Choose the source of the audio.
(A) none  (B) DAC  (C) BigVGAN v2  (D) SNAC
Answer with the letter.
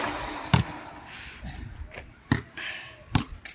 A